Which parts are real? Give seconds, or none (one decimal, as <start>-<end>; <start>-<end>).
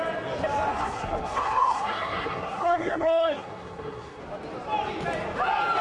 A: 0.0-0.7; 4.2-5.8